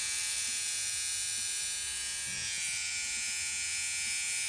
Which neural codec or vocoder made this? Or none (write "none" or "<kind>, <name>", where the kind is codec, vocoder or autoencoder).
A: vocoder, Vocos